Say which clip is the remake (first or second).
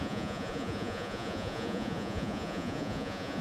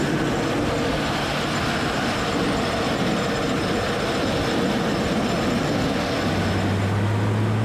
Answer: first